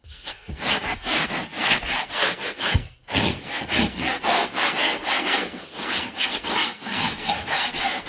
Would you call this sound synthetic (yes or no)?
yes